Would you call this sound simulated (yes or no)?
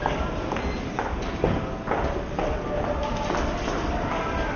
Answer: no